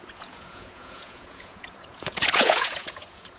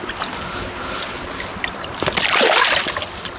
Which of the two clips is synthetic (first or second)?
first